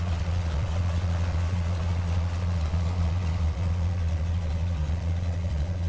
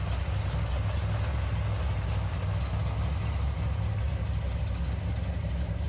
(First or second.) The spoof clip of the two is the first